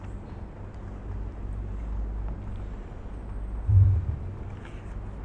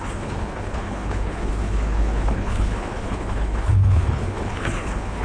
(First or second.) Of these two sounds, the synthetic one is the second